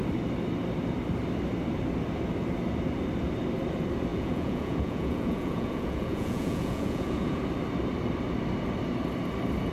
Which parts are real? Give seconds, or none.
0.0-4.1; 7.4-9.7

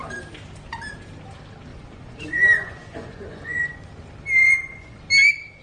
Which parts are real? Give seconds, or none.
0.0-1.7; 3.8-4.4; 5.0-5.6

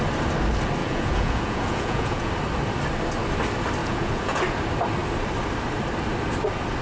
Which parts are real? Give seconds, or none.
0.0-0.8; 2.3-3.8; 4.4-6.8

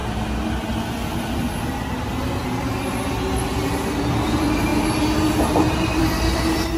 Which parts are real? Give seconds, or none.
0.0-6.8